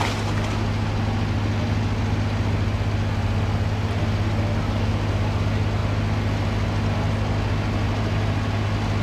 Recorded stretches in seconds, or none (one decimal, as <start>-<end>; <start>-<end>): 0.0-9.0